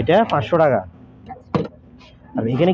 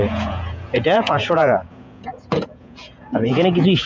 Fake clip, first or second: second